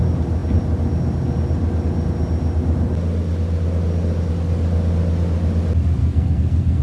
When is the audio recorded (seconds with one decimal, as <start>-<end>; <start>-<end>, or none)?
0.0-6.0